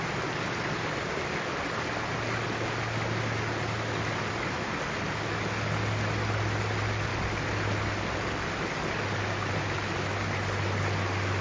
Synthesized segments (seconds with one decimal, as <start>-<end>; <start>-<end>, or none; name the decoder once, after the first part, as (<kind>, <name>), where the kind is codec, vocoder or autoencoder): none